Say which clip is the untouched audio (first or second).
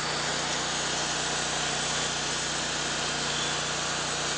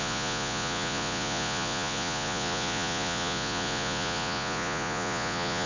first